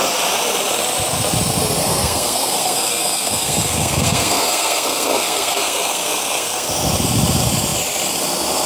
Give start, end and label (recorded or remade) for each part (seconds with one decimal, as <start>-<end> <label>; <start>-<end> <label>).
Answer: 0.0-1.8 recorded; 1.8-6.7 remade; 6.7-8.7 recorded

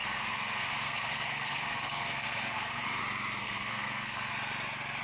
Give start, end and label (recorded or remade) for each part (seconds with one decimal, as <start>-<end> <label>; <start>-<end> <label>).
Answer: 0.0-3.0 remade; 3.0-3.4 recorded; 3.4-4.3 remade; 4.3-5.0 recorded

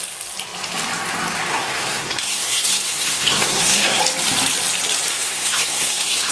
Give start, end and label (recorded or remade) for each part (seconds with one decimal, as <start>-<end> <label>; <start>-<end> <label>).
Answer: 0.0-1.5 recorded; 1.5-4.0 remade; 4.0-5.1 recorded; 5.1-6.3 remade

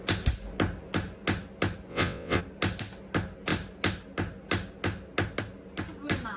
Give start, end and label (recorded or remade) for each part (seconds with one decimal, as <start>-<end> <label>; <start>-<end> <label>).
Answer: 0.0-1.9 recorded; 1.9-2.4 remade; 2.4-6.4 recorded

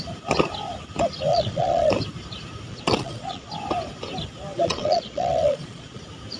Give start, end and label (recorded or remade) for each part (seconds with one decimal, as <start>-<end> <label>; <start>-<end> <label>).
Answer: 0.0-1.3 recorded; 1.3-1.9 remade; 1.9-2.7 recorded; 2.7-3.5 remade; 3.5-4.5 recorded; 4.5-6.0 remade; 6.0-6.4 recorded

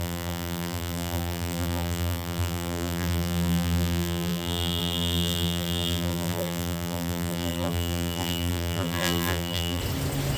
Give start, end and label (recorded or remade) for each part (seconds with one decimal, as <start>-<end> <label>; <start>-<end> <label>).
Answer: 0.0-9.8 remade; 9.8-10.4 recorded